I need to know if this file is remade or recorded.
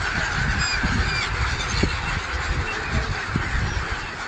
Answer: recorded